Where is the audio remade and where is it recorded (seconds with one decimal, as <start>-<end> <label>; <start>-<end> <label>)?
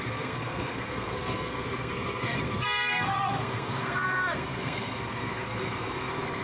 0.0-6.4 remade